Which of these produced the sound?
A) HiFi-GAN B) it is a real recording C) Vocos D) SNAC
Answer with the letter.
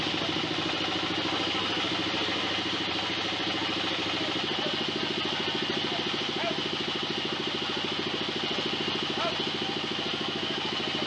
B